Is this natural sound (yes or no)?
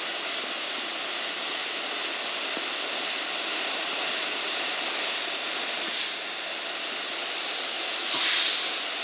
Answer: yes